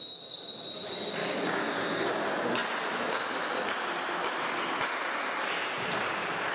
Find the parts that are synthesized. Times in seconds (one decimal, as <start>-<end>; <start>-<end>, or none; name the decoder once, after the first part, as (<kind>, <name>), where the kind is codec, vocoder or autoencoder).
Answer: 1.2-2.1 (codec, DAC)

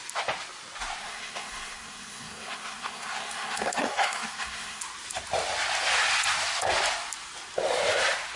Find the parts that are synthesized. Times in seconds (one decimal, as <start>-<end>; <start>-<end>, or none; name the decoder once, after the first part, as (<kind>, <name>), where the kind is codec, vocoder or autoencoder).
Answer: 1.0-4.8 (codec, SNAC)

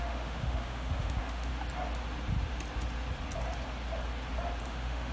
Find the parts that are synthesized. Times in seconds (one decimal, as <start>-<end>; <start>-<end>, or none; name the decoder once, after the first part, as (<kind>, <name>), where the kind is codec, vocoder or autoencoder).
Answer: 0.0-1.5 (autoencoder, DAC-VAE); 4.6-5.1

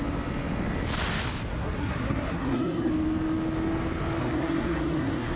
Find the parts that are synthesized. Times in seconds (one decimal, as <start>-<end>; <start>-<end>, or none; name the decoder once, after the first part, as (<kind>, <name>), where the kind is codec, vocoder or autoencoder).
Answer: 1.5-2.9 (codec, SNAC); 4.2-5.4

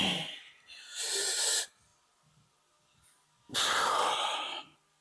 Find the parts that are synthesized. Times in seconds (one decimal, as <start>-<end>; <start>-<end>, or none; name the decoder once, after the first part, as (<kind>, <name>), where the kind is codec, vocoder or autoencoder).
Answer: none

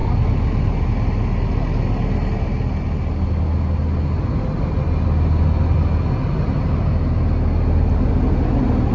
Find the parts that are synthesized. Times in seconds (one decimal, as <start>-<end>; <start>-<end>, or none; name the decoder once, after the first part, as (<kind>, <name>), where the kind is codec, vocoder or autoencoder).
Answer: none